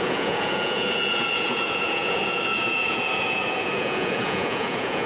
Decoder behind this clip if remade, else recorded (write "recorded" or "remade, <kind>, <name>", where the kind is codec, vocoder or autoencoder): remade, vocoder, Vocos